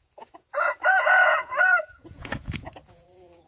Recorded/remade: remade